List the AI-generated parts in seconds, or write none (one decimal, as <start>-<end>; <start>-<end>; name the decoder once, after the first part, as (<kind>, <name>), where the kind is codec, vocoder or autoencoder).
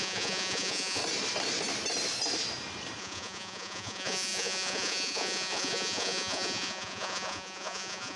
0.0-1.0 (vocoder, Vocos); 3.0-8.2